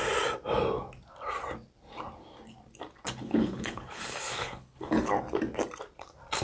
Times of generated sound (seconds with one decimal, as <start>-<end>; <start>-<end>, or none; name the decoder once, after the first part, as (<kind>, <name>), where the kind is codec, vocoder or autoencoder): 3.2-5.1 (codec, HILCodec)